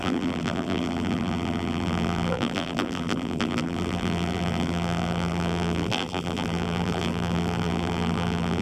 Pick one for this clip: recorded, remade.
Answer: remade